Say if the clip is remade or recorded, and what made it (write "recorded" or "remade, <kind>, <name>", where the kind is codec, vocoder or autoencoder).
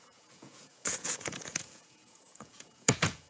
remade, vocoder, Vocos